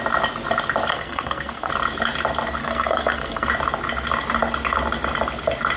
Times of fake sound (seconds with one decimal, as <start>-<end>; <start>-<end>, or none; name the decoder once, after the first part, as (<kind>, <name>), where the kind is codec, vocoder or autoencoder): 0.9-1.7 (codec, SNAC); 2.6-3.5